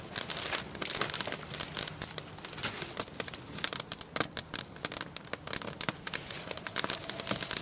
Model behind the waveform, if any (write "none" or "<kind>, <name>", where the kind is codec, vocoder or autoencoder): none